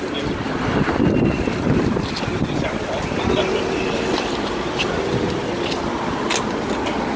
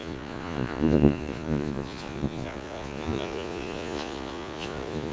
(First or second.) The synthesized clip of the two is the second